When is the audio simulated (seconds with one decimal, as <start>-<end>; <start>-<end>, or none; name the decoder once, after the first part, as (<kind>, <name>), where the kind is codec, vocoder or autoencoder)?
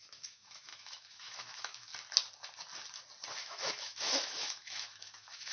0.0-1.9 (autoencoder, DAC-VAE); 3.4-5.5